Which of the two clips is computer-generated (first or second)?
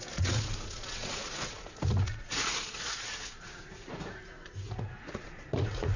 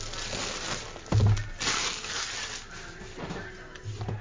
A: first